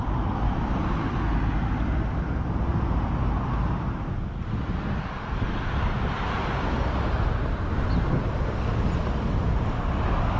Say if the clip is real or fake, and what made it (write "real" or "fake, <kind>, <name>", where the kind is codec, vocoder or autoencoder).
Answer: real